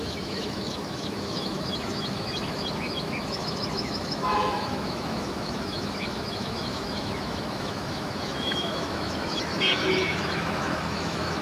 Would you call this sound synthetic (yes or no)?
yes